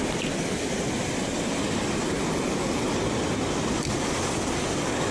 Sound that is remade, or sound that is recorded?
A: remade